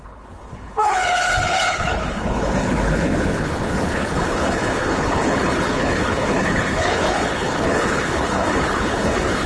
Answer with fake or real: fake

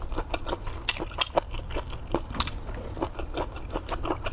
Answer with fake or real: real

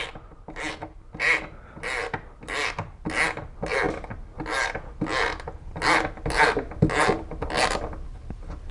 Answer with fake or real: real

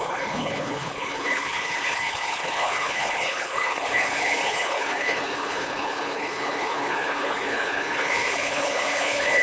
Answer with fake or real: fake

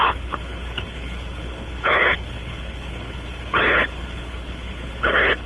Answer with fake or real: fake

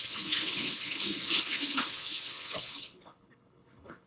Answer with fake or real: fake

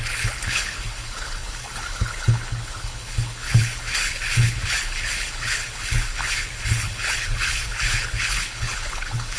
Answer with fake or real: fake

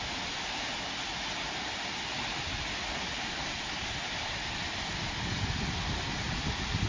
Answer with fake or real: real